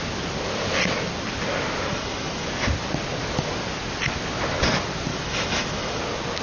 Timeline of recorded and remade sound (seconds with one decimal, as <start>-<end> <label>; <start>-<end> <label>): 0.0-1.9 recorded; 1.9-2.5 remade; 2.5-5.1 recorded; 5.1-6.0 remade; 6.0-6.4 recorded